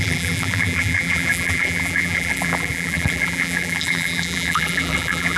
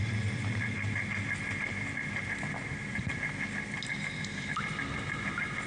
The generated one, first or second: first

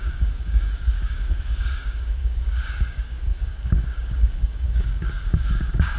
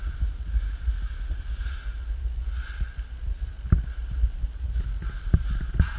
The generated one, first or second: first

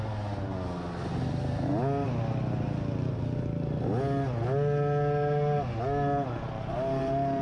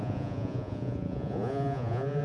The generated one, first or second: second